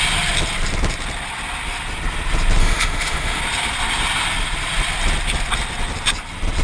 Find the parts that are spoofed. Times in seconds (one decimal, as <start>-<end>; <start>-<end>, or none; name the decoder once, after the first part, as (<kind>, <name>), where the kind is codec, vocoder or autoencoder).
2.6-3.4 (autoencoder, DAC-VAE)